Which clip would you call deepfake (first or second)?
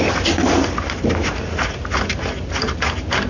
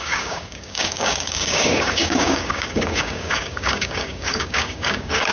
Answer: second